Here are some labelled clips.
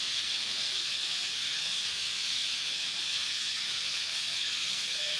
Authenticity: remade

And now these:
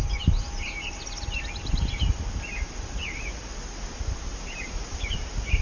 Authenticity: recorded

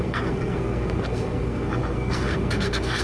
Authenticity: remade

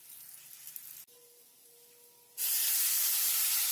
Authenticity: recorded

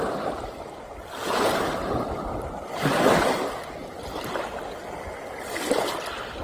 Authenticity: recorded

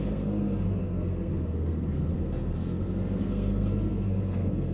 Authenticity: remade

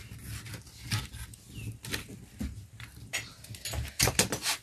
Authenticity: recorded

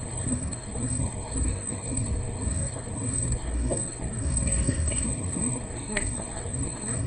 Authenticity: remade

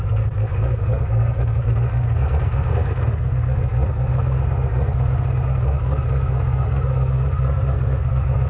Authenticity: remade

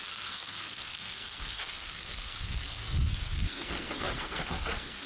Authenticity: remade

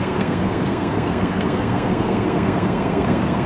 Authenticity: remade